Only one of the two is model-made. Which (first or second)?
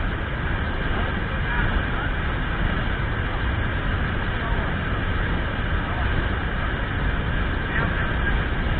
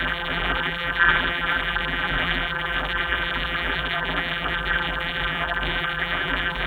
second